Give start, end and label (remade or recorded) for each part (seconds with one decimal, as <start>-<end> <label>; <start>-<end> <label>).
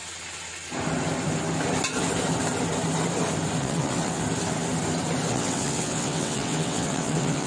0.0-3.6 recorded; 3.6-4.2 remade; 4.2-5.3 recorded; 5.3-7.5 remade